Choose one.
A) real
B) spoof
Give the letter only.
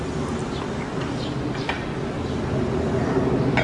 A